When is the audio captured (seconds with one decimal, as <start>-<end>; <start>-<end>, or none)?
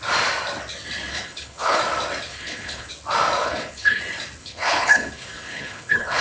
0.0-1.1; 1.8-2.3; 2.9-3.4; 4.0-4.4